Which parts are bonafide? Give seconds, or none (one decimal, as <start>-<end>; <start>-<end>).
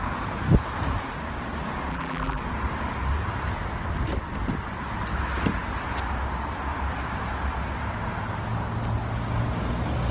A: 0.0-1.9; 2.4-10.1